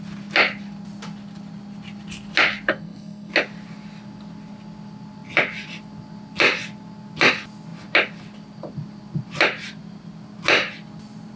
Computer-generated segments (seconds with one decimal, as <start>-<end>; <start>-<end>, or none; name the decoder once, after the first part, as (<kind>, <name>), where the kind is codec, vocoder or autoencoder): 2.7-3.3 (codec, SNAC)